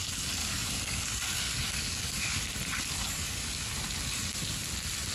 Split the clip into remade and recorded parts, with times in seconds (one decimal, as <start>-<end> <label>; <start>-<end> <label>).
0.0-0.4 recorded; 0.4-2.4 remade; 2.4-3.0 recorded; 3.0-3.7 remade; 3.7-5.1 recorded